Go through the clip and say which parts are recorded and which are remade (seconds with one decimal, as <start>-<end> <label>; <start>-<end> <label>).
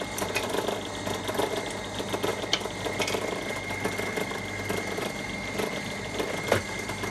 0.0-7.1 recorded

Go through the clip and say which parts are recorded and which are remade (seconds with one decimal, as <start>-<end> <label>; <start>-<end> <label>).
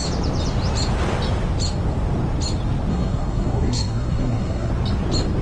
0.0-2.9 recorded; 2.9-4.7 remade; 4.7-5.4 recorded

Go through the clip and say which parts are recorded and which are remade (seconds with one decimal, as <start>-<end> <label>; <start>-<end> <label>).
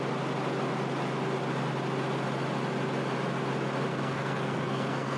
0.0-3.9 recorded; 3.9-5.2 remade